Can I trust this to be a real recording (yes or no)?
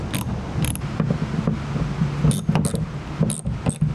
yes